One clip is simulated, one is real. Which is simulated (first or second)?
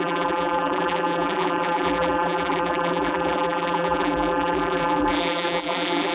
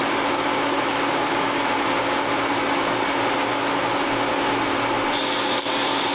first